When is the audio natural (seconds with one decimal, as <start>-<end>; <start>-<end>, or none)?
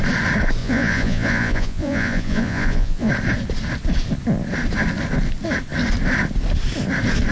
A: 0.0-0.6; 3.1-7.3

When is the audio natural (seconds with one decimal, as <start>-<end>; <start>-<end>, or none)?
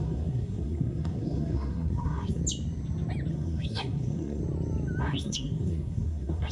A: 2.4-3.3; 4.4-5.0